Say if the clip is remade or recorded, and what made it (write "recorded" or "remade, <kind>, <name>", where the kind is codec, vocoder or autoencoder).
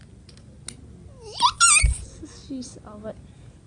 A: recorded